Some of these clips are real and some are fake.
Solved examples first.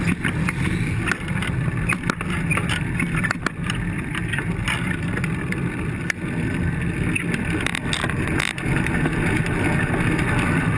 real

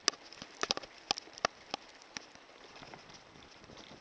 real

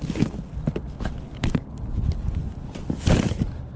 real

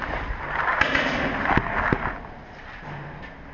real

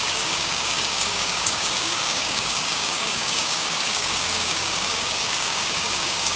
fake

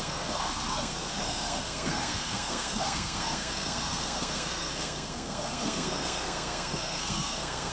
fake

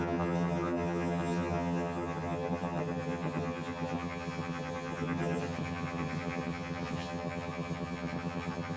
fake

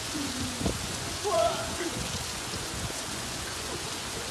fake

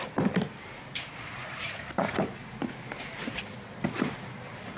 fake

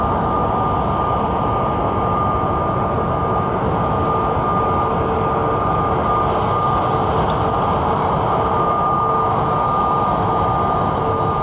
real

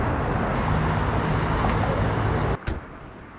real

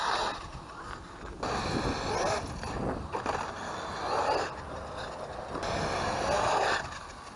real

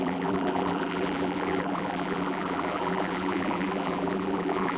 fake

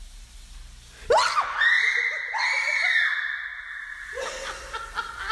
real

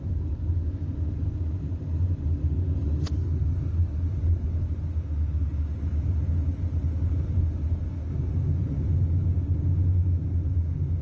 real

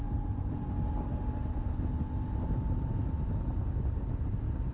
real